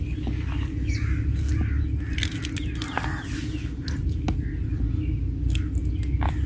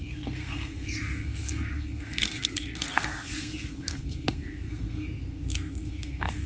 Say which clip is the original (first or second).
first